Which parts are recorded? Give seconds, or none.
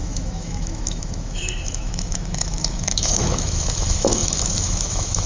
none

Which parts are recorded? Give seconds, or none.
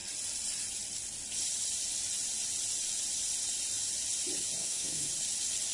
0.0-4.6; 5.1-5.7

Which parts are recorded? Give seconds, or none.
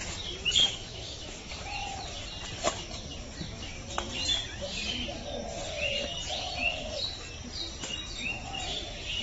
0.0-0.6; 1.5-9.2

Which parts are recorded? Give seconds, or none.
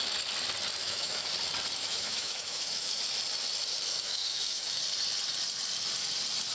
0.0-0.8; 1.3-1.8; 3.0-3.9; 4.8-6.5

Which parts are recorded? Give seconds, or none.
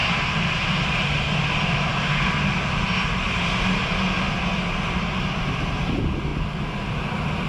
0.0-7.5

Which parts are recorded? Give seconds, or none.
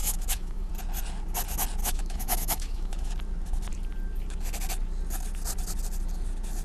0.7-1.8; 3.1-6.6